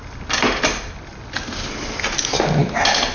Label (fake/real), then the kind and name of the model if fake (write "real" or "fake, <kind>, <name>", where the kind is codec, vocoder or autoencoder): real